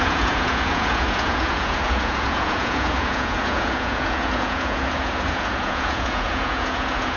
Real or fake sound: fake